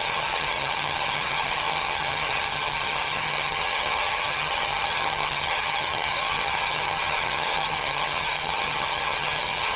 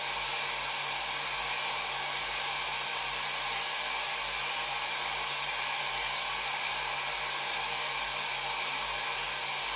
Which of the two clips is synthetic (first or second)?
first